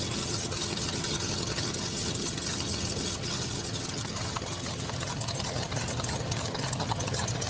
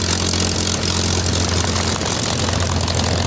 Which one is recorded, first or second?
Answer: second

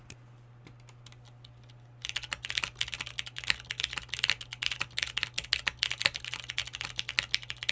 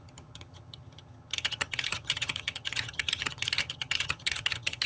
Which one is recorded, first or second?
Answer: first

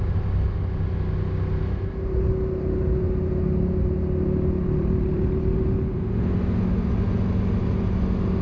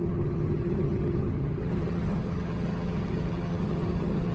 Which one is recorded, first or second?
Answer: first